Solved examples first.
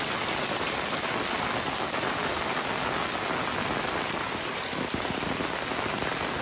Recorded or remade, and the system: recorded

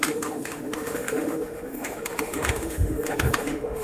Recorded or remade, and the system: remade, autoencoder, DAC-VAE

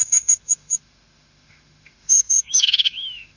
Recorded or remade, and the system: remade, autoencoder, DAC-VAE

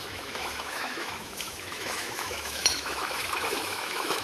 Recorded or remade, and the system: remade, autoencoder, DAC-VAE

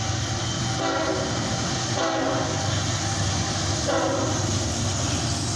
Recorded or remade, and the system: recorded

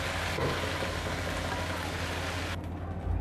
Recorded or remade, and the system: recorded